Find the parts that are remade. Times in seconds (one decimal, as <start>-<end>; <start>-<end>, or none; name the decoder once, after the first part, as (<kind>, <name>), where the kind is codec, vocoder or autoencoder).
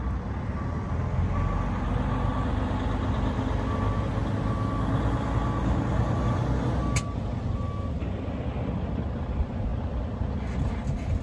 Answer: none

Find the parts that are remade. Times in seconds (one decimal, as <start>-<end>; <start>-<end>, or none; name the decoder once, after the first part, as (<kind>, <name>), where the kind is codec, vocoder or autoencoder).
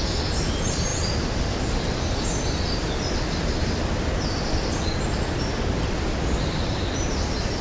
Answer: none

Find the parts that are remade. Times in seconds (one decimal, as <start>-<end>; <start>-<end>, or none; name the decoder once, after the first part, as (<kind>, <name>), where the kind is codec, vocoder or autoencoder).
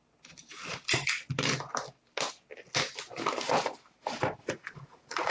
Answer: 4.4-5.3 (vocoder, Vocos)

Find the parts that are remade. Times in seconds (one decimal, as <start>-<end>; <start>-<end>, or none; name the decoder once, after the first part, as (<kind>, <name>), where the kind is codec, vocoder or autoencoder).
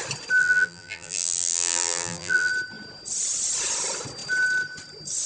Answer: 0.4-2.5 (vocoder, BigVGAN v2)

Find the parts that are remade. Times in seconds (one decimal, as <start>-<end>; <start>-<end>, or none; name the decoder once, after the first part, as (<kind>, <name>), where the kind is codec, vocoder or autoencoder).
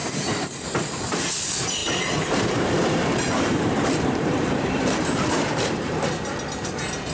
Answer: 0.0-1.3 (vocoder, BigVGAN v2); 1.8-6.1